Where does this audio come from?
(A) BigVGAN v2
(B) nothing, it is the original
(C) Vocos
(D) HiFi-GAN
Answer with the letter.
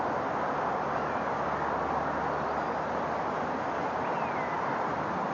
B